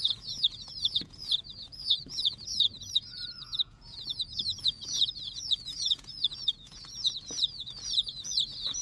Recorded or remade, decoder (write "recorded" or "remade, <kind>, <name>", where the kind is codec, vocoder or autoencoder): remade, vocoder, Vocos